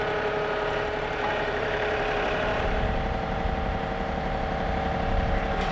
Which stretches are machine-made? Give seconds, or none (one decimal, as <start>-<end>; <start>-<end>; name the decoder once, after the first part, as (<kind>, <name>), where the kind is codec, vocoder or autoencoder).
1.3-4.7 (vocoder, BigVGAN v2)